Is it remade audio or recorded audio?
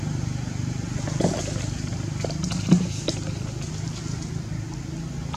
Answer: recorded